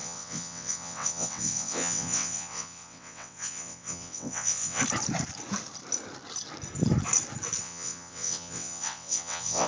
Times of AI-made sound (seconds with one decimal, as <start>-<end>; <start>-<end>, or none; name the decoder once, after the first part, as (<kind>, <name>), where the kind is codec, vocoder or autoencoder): 0.0-4.8 (vocoder, WaveNeXt); 7.6-9.7